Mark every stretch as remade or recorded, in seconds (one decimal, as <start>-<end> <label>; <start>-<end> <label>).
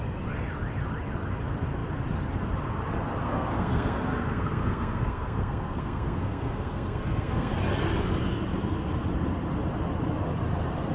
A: 0.0-3.2 recorded; 3.2-7.5 remade; 7.5-10.9 recorded